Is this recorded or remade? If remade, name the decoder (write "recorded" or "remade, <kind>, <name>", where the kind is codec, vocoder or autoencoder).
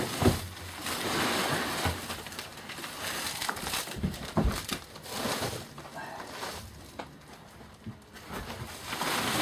recorded